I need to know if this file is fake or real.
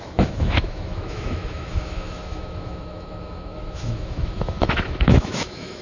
fake